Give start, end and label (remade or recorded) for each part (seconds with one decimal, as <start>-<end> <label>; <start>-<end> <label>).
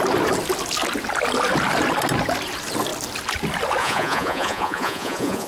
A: 0.0-3.8 recorded; 3.8-5.5 remade